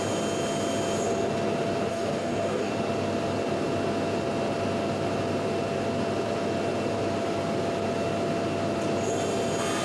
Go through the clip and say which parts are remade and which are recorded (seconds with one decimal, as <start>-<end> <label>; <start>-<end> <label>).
0.0-1.9 recorded; 1.9-2.7 remade; 2.7-9.8 recorded